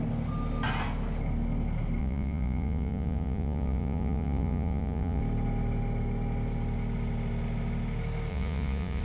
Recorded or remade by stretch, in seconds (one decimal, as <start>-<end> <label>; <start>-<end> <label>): 0.0-2.0 recorded; 2.0-5.2 remade; 5.2-8.3 recorded; 8.3-9.0 remade